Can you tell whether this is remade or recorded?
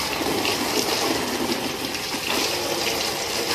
recorded